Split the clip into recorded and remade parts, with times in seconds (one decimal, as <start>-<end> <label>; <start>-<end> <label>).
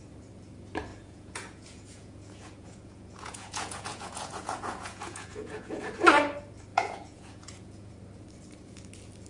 0.0-0.9 recorded; 0.9-5.8 remade; 5.8-6.7 recorded; 6.7-7.9 remade; 7.9-9.3 recorded